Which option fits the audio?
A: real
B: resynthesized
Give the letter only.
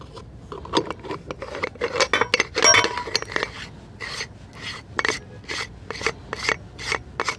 A